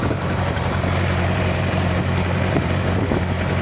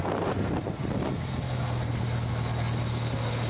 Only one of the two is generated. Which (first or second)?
first